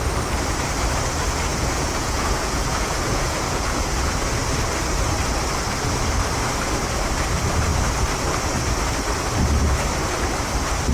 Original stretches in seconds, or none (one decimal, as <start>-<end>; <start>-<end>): 0.0-1.5; 4.3-10.9